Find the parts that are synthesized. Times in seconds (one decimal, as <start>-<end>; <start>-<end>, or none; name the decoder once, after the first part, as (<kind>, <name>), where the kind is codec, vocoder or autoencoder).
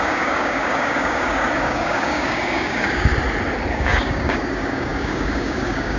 0.0-3.1 (codec, DAC); 3.7-6.0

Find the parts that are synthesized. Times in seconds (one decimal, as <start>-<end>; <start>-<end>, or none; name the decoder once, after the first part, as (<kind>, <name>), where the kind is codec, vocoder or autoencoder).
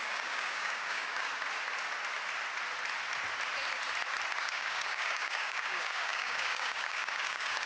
0.0-1.3 (codec, DAC); 4.4-7.7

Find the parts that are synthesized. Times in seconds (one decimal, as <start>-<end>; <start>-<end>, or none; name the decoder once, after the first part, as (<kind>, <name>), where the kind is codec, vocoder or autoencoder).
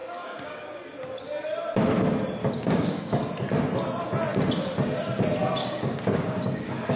0.0-0.8 (codec, DAC); 2.4-3.2; 5.6-7.0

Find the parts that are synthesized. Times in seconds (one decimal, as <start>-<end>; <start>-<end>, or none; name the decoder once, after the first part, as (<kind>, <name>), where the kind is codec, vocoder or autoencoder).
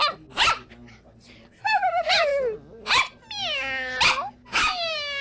4.4-5.2 (codec, DAC)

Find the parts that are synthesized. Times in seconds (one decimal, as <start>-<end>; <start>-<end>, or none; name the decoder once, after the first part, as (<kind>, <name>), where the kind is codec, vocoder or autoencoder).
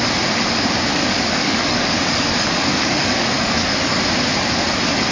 0.9-4.0 (codec, DAC)